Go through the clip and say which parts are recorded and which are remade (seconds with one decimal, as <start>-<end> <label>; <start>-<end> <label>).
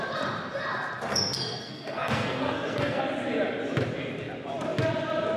0.0-1.1 recorded; 1.1-3.0 remade; 3.0-5.4 recorded